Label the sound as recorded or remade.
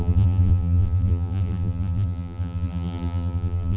remade